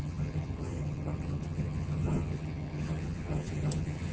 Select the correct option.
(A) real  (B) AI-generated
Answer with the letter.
B